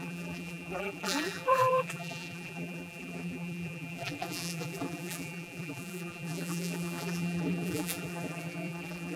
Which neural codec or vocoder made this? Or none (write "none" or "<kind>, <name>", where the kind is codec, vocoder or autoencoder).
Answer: vocoder, BigVGAN v2